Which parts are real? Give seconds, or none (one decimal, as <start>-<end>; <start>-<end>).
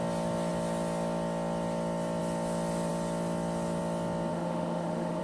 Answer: 0.0-4.3